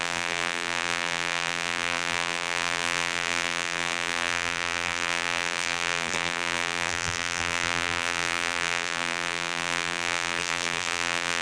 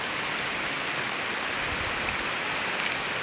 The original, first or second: second